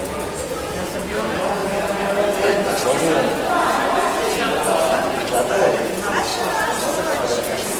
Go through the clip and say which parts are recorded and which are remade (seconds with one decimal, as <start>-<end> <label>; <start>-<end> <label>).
0.0-1.6 remade; 1.6-3.5 recorded; 3.5-6.3 remade; 6.3-6.8 recorded; 6.8-7.8 remade